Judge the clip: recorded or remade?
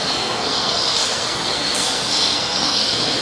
remade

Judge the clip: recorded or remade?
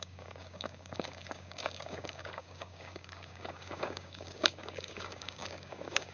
remade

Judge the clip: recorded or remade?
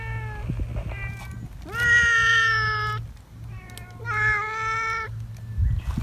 recorded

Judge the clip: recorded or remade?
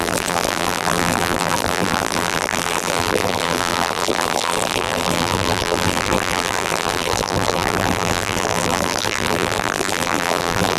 remade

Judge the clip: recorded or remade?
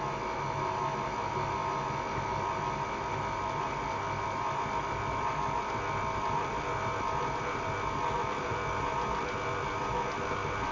recorded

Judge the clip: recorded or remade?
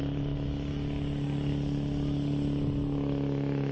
recorded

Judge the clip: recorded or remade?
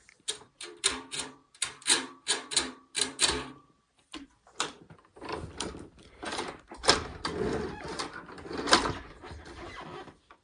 remade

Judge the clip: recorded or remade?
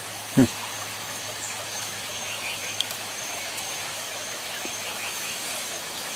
remade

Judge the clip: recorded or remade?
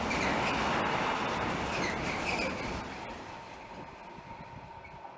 recorded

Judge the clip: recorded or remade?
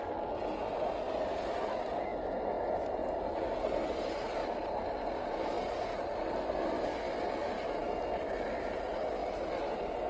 recorded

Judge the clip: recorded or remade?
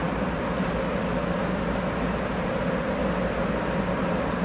recorded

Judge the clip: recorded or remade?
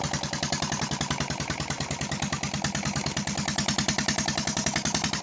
recorded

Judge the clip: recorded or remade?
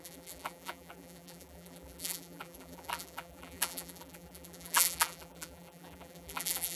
remade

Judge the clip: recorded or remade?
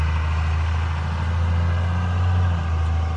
recorded